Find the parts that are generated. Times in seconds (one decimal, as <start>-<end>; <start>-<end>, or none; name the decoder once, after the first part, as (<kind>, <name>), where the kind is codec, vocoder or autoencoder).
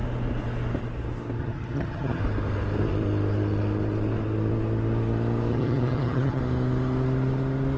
1.4-2.2 (vocoder, HiFi-GAN); 5.5-6.4